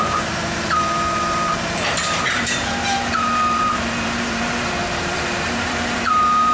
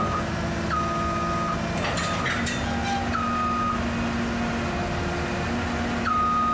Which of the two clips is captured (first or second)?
second